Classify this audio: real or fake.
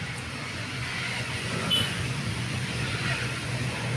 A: fake